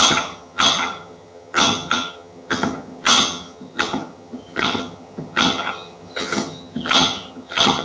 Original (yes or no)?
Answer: no